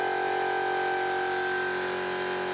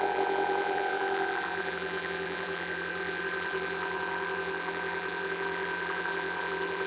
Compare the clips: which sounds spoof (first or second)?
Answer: second